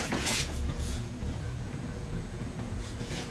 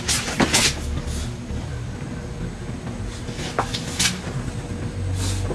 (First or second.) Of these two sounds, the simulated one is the first